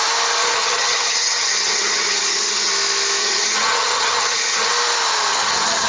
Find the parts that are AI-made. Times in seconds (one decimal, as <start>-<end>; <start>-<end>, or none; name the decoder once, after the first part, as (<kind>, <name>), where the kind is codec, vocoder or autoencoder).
0.4-2.7 (vocoder, HiFi-GAN); 3.2-4.7; 5.3-5.9